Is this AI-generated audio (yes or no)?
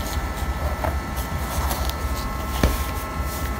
yes